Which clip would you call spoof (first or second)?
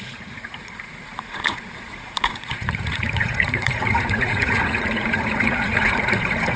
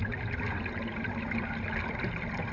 first